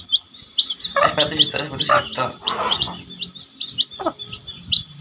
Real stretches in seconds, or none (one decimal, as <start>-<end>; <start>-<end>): 0.0-2.4; 2.9-5.0